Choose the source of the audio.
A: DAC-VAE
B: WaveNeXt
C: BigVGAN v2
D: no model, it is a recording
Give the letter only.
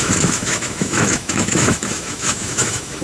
A